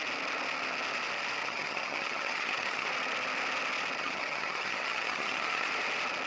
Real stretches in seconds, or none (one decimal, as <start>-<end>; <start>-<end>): 0.0-1.4; 2.9-4.0; 5.7-6.3